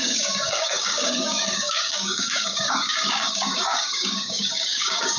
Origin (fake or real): fake